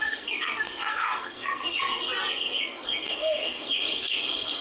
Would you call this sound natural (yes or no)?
no